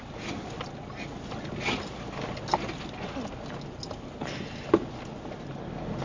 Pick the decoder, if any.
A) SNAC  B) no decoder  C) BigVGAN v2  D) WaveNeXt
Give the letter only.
B